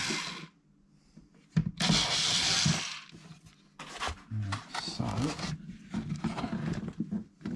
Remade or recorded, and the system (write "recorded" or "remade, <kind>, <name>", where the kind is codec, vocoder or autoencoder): recorded